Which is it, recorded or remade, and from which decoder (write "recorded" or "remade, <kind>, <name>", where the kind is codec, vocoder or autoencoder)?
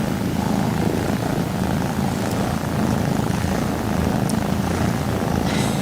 recorded